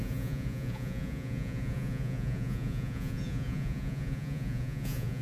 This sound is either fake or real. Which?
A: fake